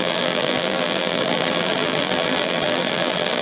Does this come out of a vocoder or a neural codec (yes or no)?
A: yes